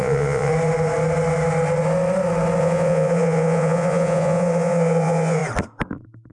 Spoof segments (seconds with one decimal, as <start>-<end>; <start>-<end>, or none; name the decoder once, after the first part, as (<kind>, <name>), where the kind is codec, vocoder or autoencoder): 0.0-0.5 (vocoder, Vocos); 2.6-5.4